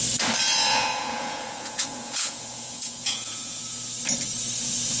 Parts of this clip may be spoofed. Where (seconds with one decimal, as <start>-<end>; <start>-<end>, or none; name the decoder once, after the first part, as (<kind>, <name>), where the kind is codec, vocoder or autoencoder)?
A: 0.7-3.6 (vocoder, Vocos)